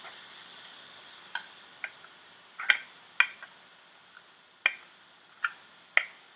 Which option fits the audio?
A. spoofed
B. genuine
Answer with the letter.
B